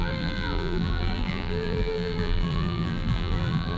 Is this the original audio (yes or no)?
no